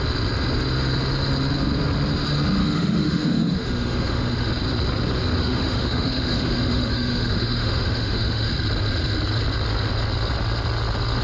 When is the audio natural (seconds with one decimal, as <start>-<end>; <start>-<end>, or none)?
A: 0.0-2.6; 4.5-5.4; 8.5-11.2